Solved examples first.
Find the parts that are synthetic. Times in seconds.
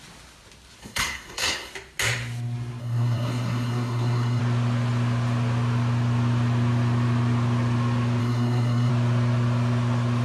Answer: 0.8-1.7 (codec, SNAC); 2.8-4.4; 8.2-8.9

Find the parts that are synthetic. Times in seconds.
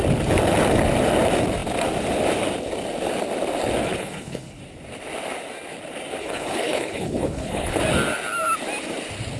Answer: 3.8-4.6 (codec, HILCodec); 6.2-7.8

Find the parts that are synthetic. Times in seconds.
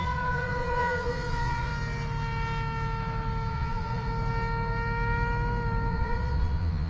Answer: 0.0-1.7 (vocoder, Vocos); 3.5-4.1; 5.9-6.9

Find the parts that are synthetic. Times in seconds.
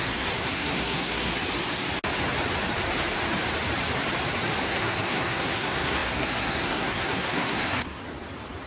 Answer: 0.0-1.3 (codec, SNAC); 4.6-8.0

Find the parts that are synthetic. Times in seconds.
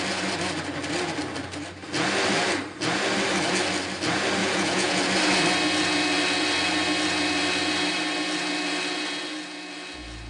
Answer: 4.4-5.0 (vocoder, Vocos)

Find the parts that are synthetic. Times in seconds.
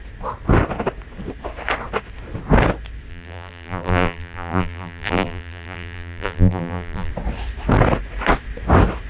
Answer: 3.1-7.1 (vocoder, BigVGAN v2)